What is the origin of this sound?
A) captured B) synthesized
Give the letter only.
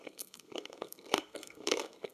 B